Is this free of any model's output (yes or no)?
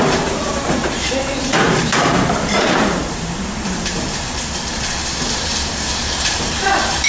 no